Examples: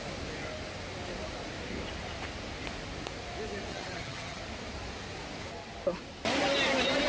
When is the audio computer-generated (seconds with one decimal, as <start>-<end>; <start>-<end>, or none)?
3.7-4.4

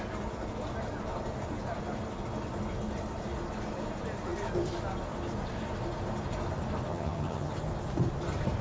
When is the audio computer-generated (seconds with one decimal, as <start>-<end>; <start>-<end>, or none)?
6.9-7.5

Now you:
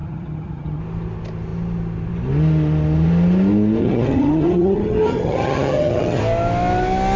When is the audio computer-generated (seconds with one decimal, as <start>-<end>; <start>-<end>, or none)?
0.0-0.8; 3.8-6.2

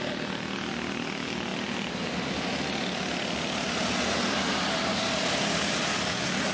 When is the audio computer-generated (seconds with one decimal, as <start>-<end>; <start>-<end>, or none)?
none

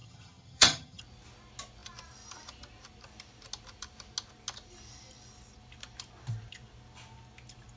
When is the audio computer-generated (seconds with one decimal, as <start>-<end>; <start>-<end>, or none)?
0.0-1.0

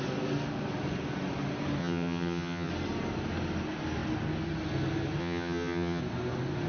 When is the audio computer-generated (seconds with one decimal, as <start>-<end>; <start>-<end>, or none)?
1.8-2.7; 5.2-6.0

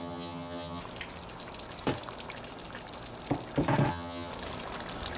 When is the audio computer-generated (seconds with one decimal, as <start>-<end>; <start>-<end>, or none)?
0.0-0.8; 3.9-4.3